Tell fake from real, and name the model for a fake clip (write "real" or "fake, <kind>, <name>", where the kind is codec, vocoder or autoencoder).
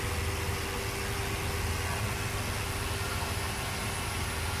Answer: real